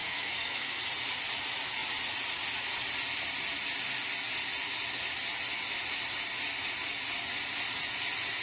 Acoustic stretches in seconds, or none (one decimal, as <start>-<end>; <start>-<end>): 0.8-8.4